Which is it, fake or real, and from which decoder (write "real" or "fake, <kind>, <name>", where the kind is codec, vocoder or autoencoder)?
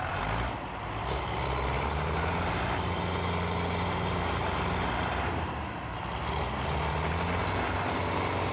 real